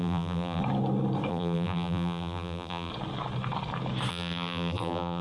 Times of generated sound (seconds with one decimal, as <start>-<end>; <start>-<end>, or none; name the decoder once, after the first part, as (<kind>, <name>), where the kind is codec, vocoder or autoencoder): 0.0-0.6 (vocoder, BigVGAN v2); 1.3-2.9; 4.1-5.2